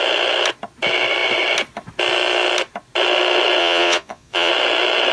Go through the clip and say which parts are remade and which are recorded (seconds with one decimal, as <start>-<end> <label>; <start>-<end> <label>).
0.0-3.6 recorded; 3.6-4.5 remade; 4.5-5.1 recorded